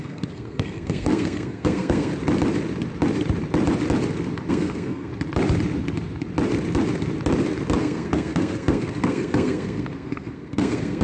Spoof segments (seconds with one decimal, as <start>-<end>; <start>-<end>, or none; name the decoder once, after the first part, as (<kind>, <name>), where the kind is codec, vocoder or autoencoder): 0.0-2.1 (codec, SNAC); 4.5-5.1; 7.8-11.0